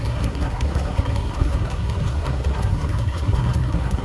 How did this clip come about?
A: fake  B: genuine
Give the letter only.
A